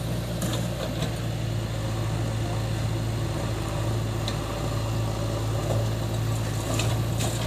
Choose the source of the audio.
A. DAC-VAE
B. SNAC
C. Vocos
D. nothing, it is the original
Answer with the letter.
D